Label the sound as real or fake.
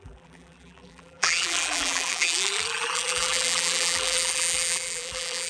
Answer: fake